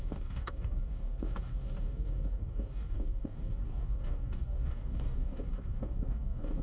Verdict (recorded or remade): remade